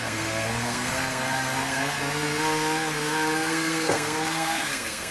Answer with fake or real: fake